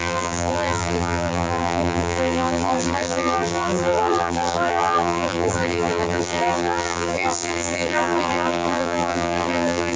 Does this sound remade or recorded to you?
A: remade